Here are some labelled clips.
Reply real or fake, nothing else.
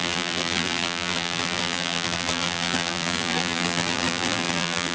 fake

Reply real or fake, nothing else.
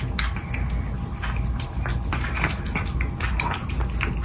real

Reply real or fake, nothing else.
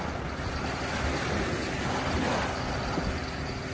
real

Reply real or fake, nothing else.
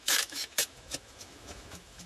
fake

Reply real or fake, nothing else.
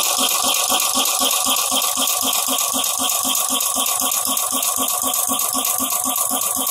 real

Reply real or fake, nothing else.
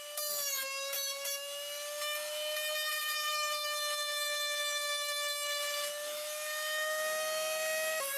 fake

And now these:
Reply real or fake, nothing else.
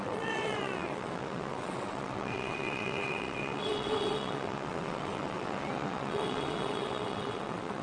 fake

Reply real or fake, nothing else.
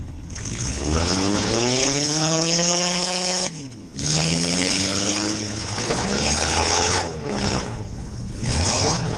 fake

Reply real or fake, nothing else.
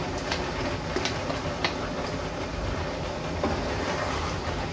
fake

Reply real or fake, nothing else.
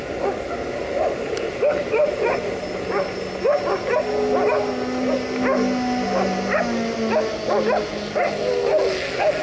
real